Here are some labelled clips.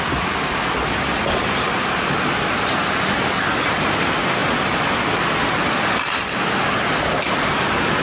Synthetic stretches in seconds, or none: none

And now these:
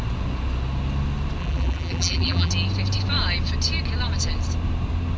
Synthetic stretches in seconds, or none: 1.4-2.5 (vocoder, BigVGAN v2)

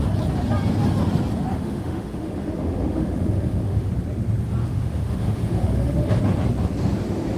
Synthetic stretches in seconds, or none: 1.5-3.9 (autoencoder, DAC-VAE); 4.6-6.2

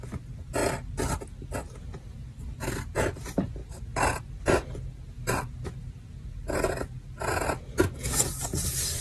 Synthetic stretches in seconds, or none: none